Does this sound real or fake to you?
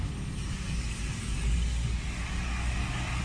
fake